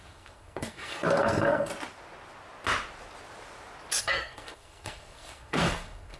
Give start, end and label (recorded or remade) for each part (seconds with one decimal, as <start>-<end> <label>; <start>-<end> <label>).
0.0-1.7 remade; 1.7-4.0 recorded; 4.0-6.2 remade